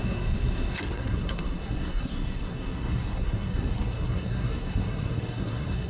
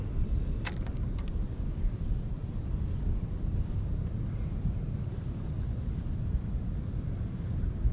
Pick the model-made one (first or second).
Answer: first